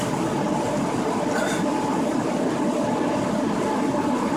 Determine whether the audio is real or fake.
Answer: real